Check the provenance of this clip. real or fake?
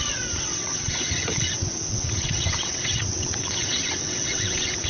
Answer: fake